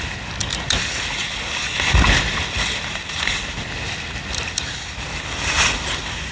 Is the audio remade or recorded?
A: recorded